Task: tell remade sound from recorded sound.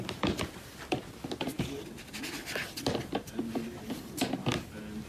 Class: recorded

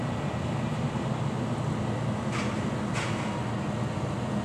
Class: recorded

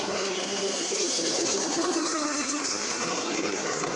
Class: remade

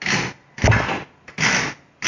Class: recorded